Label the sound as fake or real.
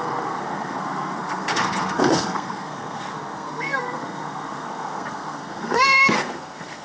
fake